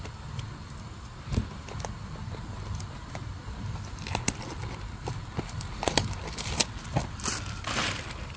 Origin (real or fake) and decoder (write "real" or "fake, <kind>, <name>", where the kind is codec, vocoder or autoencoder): fake, vocoder, BigVGAN v2